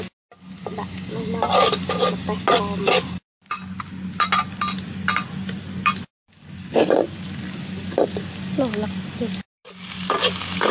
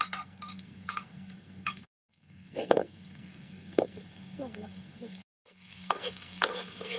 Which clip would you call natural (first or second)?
first